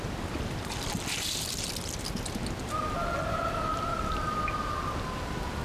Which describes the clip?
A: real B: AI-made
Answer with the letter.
A